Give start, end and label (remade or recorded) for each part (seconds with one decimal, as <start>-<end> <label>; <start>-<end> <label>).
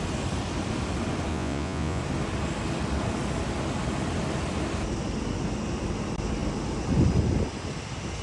0.0-1.3 recorded; 1.3-2.0 remade; 2.0-8.2 recorded